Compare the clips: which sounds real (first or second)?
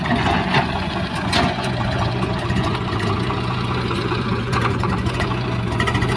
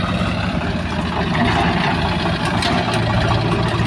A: second